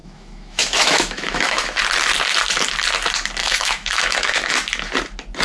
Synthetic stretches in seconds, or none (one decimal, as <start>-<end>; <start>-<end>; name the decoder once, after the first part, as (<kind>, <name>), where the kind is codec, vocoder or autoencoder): 0.0-1.8 (autoencoder, DAC-VAE); 3.4-4.5